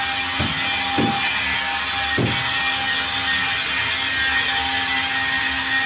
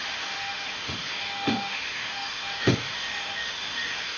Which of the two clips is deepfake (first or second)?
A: second